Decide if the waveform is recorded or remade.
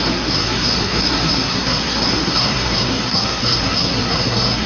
remade